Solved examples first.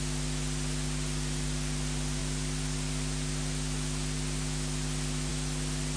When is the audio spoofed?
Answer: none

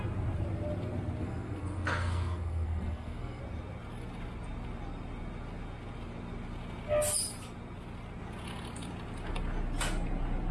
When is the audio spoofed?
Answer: 1.2-3.4

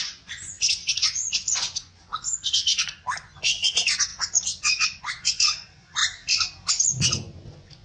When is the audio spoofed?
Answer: 0.0-6.0; 6.7-7.8

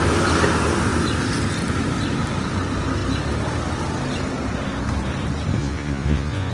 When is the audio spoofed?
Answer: 5.6-6.5

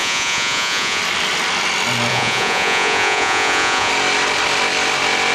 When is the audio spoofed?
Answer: 0.0-1.0; 2.1-3.9

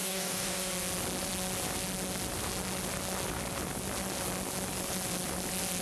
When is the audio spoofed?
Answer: 0.0-0.7